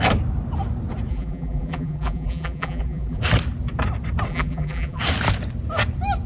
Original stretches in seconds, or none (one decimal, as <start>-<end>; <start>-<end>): 0.0-1.1; 3.2-4.3; 5.0-6.3